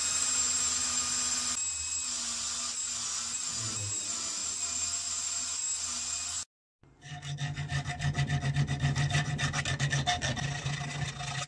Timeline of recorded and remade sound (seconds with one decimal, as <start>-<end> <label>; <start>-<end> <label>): 0.0-11.5 recorded